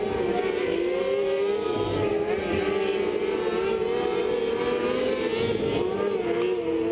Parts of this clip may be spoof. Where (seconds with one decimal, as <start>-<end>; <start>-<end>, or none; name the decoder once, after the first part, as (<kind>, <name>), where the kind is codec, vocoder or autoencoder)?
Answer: none